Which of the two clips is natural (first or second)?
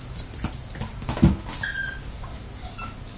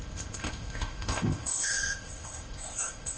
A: first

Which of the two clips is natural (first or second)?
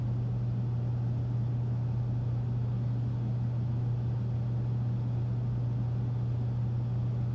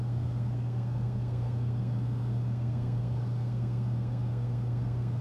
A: first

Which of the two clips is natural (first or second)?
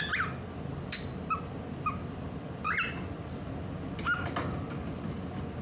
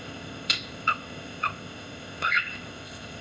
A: first